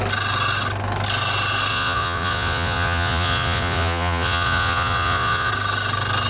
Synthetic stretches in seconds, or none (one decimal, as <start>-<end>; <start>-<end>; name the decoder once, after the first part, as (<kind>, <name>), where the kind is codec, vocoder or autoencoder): 1.7-5.5 (vocoder, Vocos)